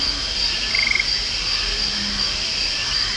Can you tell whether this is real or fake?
real